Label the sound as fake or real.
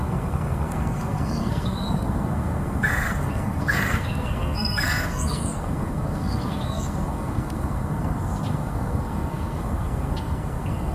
fake